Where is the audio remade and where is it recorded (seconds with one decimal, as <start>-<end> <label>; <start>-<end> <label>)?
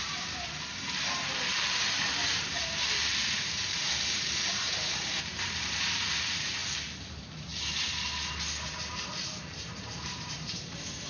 0.0-6.6 remade; 6.6-7.1 recorded; 7.1-7.5 remade; 7.5-8.7 recorded; 8.7-11.1 remade